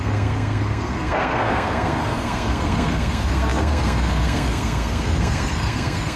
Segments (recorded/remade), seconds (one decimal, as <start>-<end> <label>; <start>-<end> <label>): 0.0-6.2 remade